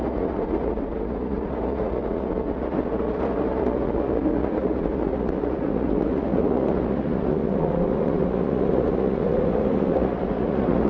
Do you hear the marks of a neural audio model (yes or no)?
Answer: yes